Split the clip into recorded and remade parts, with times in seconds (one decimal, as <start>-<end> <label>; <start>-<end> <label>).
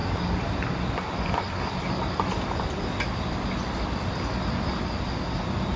0.0-5.8 recorded